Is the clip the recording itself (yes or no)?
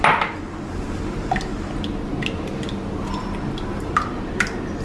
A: yes